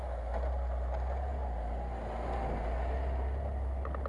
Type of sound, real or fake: real